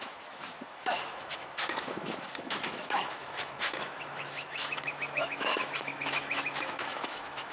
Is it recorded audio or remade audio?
remade